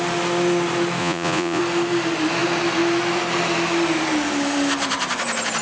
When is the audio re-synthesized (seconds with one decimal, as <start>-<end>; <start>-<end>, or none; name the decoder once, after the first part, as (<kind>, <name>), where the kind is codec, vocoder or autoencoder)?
1.0-1.6 (vocoder, Vocos)